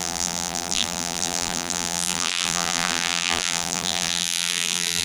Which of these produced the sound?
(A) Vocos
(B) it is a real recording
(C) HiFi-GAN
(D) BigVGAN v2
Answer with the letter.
D